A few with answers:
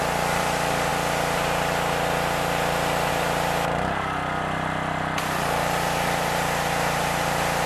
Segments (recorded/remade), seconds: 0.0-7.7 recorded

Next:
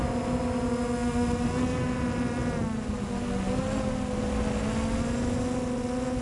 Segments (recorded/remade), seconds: 0.0-6.2 recorded

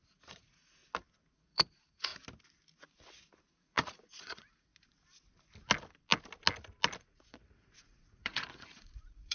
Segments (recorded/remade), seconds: 0.0-0.8 remade; 0.8-1.3 recorded; 1.3-2.1 remade; 2.1-3.5 recorded; 3.5-4.7 remade; 4.7-7.0 recorded; 7.0-9.3 remade